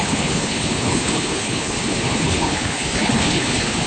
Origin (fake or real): fake